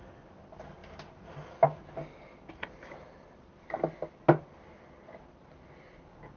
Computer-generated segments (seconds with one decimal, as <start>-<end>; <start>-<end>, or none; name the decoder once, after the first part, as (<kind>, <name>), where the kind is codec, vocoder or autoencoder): none